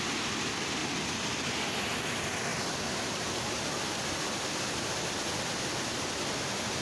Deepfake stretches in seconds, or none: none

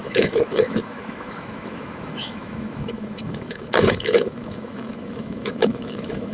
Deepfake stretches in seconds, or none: 0.0-6.3

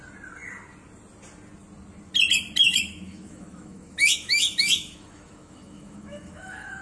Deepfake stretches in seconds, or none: 2.6-6.8

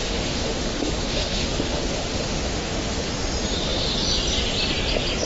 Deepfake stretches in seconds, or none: 0.0-3.1

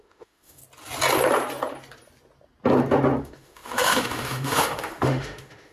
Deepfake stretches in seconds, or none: 0.0-0.6; 3.2-5.7